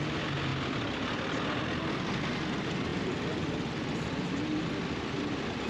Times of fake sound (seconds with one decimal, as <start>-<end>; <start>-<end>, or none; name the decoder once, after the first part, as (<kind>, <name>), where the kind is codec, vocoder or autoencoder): none